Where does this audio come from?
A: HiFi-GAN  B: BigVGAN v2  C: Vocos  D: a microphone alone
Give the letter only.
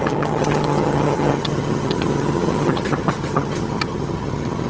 A